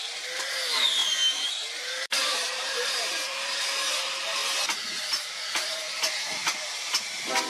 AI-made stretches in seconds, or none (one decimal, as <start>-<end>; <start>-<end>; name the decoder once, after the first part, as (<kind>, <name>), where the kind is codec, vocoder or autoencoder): 0.0-4.4 (vocoder, BigVGAN v2); 5.1-7.5